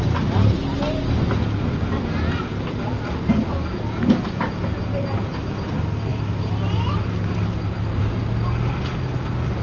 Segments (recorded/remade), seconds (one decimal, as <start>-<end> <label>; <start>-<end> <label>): 0.0-6.1 recorded; 6.1-8.1 remade; 8.1-9.6 recorded